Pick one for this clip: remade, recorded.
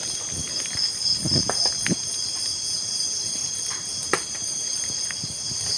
recorded